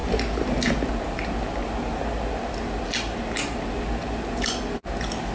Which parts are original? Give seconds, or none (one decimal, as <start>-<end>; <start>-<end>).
0.0-5.3